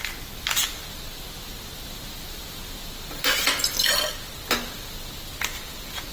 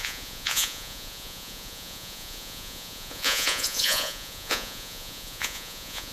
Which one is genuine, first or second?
first